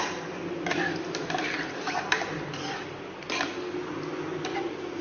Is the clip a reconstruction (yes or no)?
no